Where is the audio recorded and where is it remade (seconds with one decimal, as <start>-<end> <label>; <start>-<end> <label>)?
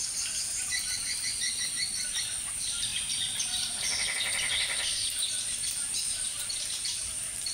0.0-2.9 remade; 2.9-5.9 recorded; 5.9-7.5 remade